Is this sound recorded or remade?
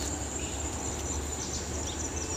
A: recorded